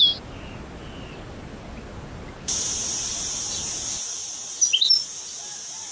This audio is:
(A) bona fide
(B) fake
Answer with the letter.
A